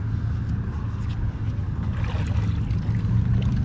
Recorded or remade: recorded